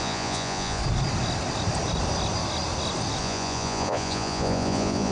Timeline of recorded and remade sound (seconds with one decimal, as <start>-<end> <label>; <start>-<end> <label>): 0.0-0.8 remade; 0.8-3.2 recorded; 3.2-5.1 remade

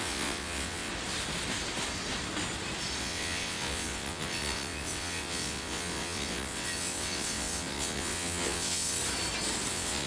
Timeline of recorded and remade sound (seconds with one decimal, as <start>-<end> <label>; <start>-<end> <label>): 0.0-0.9 remade; 0.9-3.0 recorded; 3.0-9.0 remade; 9.0-9.7 recorded; 9.7-10.1 remade

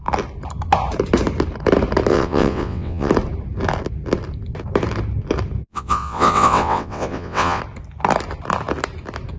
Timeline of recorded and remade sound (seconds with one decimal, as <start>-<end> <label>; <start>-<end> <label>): 0.0-2.1 recorded; 2.1-3.1 remade; 3.1-5.7 recorded; 5.7-7.6 remade; 7.6-9.4 recorded

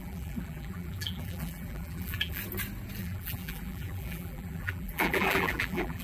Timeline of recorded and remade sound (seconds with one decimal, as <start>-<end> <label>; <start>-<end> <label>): 0.0-2.4 remade; 2.4-3.0 recorded; 3.0-6.0 remade

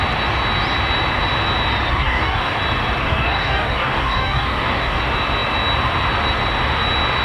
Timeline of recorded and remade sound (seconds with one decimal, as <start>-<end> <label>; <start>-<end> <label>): 0.0-1.9 recorded; 1.9-2.6 remade; 2.6-3.0 recorded; 3.0-5.0 remade; 5.0-7.2 recorded

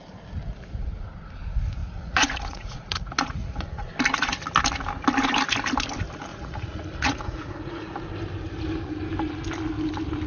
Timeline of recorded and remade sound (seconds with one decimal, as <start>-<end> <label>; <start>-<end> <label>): 0.0-1.8 recorded; 1.8-3.9 remade; 3.9-6.3 recorded; 6.3-7.9 remade; 7.9-10.3 recorded

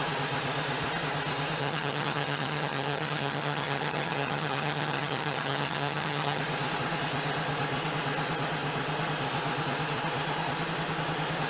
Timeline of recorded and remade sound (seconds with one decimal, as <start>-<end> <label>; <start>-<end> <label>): 0.0-1.6 recorded; 1.6-6.4 remade; 6.4-11.5 recorded

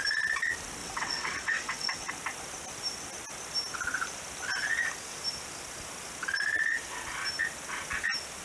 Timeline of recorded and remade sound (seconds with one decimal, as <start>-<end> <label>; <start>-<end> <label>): 0.0-0.8 recorded; 0.8-2.1 remade; 2.1-8.4 recorded